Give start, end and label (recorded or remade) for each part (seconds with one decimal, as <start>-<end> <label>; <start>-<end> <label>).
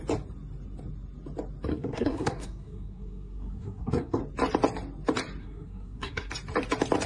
0.0-1.7 recorded; 1.7-4.2 remade; 4.2-5.4 recorded; 5.4-6.3 remade; 6.3-7.1 recorded